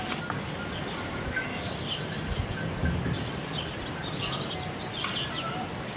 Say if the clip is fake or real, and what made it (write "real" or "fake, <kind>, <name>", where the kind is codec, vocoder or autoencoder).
real